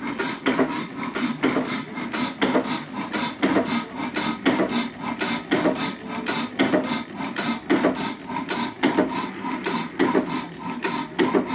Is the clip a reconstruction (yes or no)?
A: no